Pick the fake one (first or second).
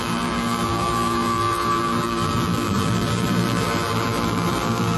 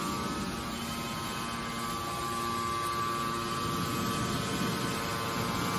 first